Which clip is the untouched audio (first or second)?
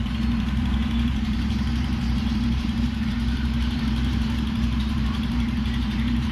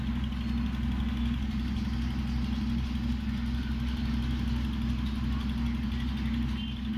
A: second